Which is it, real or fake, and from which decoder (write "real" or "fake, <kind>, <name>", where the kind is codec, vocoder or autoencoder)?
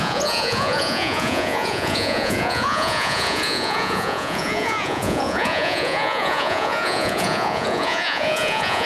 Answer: fake, vocoder, Vocos